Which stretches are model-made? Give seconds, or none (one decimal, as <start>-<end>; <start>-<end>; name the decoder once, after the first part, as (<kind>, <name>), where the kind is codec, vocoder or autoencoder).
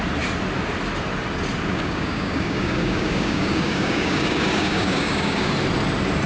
1.7-5.5 (codec, DAC)